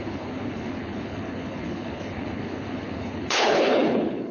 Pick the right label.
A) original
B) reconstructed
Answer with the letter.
B